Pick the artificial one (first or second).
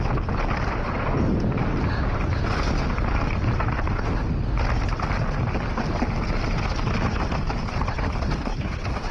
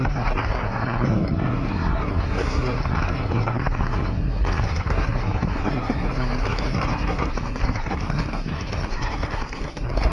second